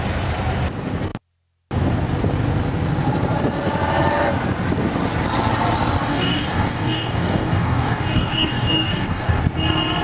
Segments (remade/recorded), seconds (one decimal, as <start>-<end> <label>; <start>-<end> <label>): 0.0-6.1 recorded; 6.1-9.4 remade; 9.4-10.0 recorded